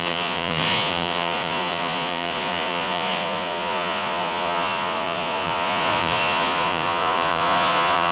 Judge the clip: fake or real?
fake